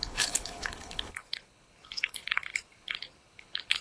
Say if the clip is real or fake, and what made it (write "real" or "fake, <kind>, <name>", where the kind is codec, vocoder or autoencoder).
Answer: fake, codec, HILCodec